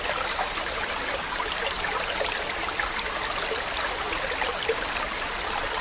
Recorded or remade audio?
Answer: recorded